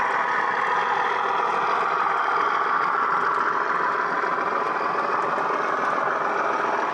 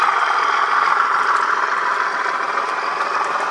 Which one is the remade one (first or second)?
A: second